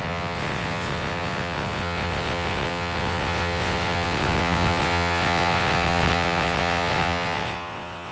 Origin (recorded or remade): remade